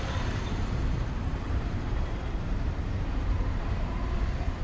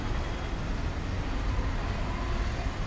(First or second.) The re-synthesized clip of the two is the first